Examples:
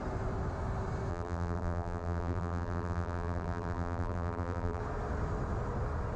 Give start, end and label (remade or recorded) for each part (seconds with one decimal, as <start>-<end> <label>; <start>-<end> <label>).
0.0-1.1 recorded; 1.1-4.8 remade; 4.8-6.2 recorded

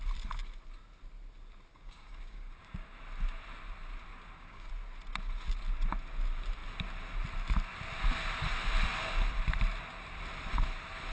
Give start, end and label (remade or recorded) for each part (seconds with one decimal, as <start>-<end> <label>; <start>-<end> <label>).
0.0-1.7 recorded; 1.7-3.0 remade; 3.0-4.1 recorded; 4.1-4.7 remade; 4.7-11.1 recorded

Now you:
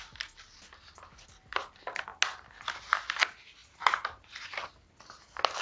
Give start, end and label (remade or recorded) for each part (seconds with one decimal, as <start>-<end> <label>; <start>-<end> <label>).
0.0-5.6 recorded